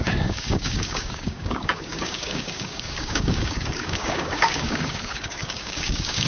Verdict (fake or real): fake